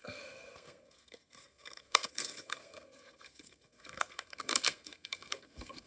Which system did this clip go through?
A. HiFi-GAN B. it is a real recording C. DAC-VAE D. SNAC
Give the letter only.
D